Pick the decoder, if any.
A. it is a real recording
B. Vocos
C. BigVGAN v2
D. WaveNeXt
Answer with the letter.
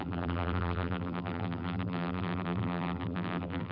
C